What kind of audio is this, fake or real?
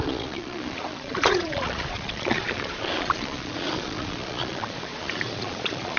fake